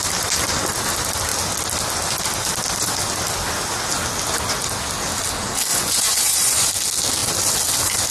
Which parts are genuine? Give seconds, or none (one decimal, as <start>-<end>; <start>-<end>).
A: 0.0-5.7; 6.7-8.1